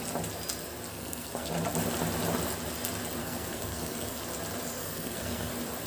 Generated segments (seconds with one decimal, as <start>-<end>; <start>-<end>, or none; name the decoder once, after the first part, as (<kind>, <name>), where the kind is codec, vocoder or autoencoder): 0.9-1.5 (codec, SNAC); 3.2-4.2; 4.8-5.5